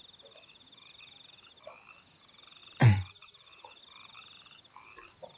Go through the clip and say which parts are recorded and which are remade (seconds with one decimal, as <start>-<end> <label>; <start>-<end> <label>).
0.0-2.6 recorded; 2.6-3.8 remade; 3.8-5.4 recorded